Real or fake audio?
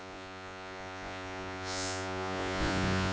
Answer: fake